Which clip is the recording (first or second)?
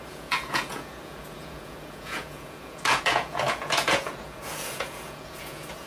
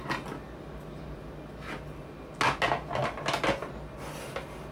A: second